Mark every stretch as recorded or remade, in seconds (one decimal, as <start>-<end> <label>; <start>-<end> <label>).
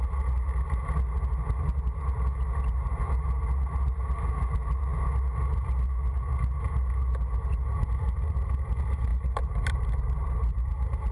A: 0.0-9.1 recorded; 9.1-10.7 remade; 10.7-11.1 recorded